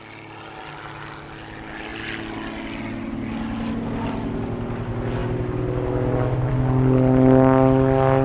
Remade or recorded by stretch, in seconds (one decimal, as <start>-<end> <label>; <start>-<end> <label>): 0.0-8.2 recorded